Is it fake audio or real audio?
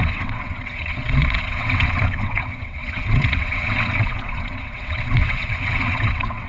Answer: fake